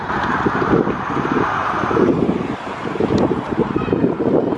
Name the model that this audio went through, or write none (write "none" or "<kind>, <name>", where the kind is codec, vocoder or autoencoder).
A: vocoder, BigVGAN v2